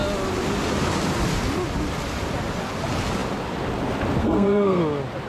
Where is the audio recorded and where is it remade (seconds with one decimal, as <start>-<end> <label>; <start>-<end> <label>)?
0.0-4.2 recorded; 4.2-4.8 remade; 4.8-5.3 recorded